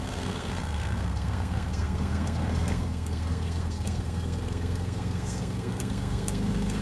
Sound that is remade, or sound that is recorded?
remade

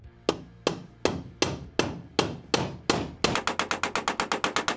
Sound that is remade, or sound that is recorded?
recorded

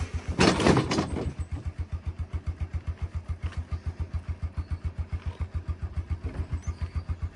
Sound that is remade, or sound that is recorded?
recorded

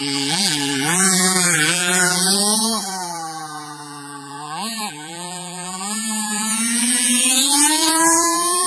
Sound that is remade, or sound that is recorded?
remade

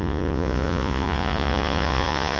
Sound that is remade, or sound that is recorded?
remade